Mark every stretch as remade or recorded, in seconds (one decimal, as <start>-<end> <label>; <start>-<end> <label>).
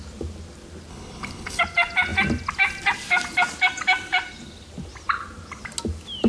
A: 0.0-0.9 recorded; 0.9-1.6 remade; 1.6-6.3 recorded